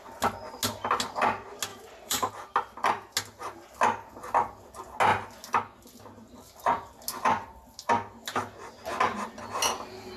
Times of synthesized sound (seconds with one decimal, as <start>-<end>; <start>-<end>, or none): 1.7-2.3